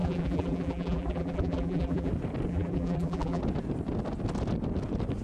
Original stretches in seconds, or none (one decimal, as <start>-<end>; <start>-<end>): 2.1-2.5; 3.4-5.2